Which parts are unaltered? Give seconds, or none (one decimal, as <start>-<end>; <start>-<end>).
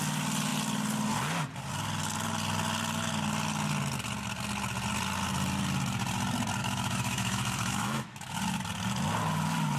0.0-6.6; 8.3-9.8